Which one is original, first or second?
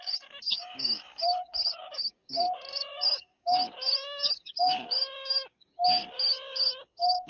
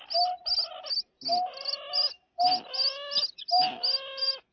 second